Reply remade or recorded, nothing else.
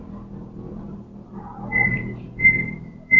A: remade